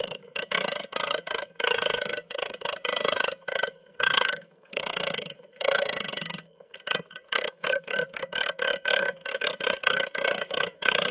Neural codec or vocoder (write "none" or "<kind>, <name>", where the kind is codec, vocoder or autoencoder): codec, SNAC